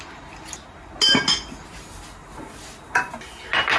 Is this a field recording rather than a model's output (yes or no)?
yes